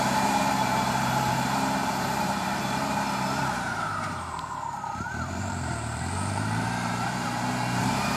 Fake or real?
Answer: fake